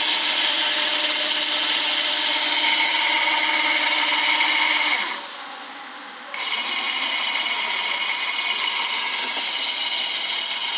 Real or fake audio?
real